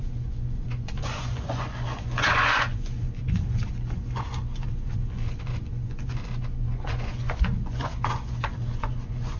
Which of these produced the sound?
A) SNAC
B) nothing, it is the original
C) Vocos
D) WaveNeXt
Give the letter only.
C